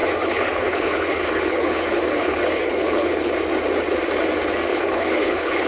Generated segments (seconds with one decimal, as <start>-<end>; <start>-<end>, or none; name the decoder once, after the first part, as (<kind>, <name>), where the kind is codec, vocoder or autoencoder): 0.0-3.3 (codec, HILCodec); 4.7-5.7